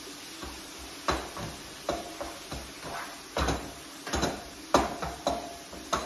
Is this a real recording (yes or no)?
yes